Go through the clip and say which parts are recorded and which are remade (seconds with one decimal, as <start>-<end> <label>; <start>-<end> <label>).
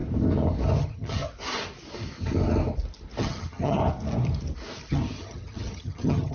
0.0-0.8 recorded; 0.8-1.3 remade; 1.3-3.2 recorded; 3.2-3.8 remade; 3.8-4.9 recorded; 4.9-6.3 remade